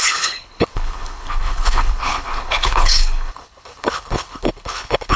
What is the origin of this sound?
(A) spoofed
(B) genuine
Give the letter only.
A